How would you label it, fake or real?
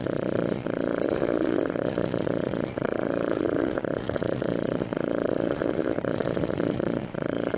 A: fake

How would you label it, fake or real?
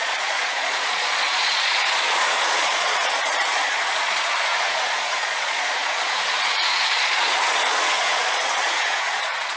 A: fake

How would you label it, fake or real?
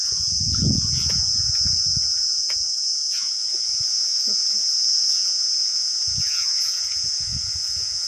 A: fake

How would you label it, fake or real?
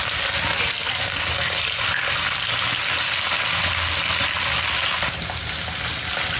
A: real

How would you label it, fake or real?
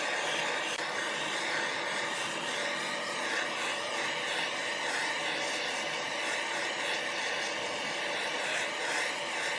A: real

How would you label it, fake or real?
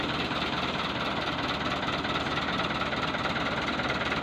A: real